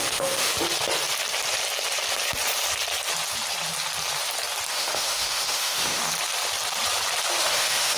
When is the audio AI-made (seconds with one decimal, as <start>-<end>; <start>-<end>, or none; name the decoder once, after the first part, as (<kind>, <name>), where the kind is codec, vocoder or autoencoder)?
0.0-0.5 (autoencoder, DAC-VAE); 4.7-6.0; 7.4-8.0